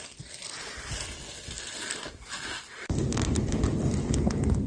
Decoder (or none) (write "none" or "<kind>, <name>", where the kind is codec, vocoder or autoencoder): none